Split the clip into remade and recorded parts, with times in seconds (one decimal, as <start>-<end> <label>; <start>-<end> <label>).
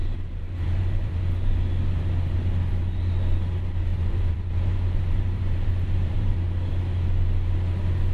0.0-1.2 remade; 1.2-3.9 recorded; 3.9-6.7 remade; 6.7-8.1 recorded